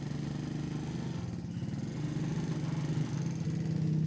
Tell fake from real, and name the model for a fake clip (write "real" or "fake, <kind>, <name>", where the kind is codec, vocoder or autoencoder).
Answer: real